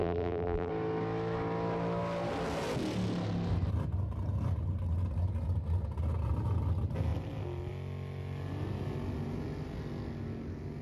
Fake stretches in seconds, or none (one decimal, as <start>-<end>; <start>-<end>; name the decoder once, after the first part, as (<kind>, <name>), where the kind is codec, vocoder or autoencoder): 0.0-0.7 (vocoder, BigVGAN v2)